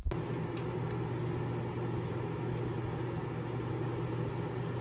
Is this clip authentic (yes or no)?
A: yes